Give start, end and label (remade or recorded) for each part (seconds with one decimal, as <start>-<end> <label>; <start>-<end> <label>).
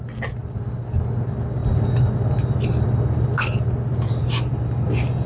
0.0-5.3 recorded